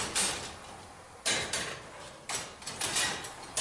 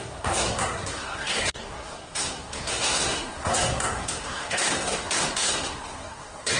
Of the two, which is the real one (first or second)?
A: first